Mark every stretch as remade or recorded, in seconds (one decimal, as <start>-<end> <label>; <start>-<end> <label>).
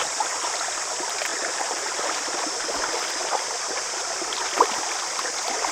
0.0-1.3 recorded; 1.3-2.0 remade; 2.0-5.7 recorded